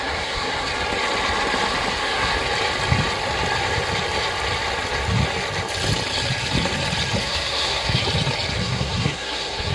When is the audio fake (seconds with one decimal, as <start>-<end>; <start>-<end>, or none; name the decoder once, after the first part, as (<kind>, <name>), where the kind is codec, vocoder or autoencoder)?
0.0-0.7 (codec, SNAC); 1.9-2.3; 7.2-8.0; 8.6-9.7